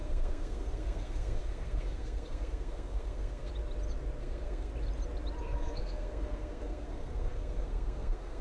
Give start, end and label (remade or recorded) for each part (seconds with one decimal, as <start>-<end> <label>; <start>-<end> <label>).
0.0-3.5 remade; 3.5-4.2 recorded; 4.2-4.7 remade; 4.7-5.4 recorded; 5.4-8.4 remade